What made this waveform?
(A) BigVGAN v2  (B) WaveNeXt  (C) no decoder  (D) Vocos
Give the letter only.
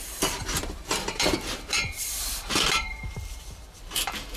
A